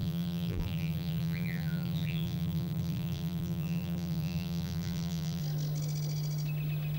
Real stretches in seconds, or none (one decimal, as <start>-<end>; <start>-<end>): 5.4-7.0

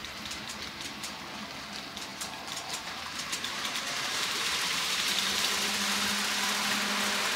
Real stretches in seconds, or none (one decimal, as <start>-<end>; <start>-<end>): 1.2-2.1; 5.1-7.4

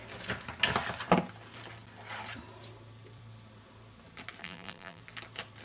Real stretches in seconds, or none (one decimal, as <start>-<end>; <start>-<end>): 0.0-4.4; 5.0-5.6

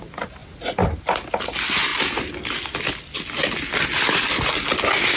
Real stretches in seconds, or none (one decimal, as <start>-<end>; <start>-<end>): 0.0-5.2